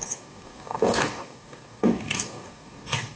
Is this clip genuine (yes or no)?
no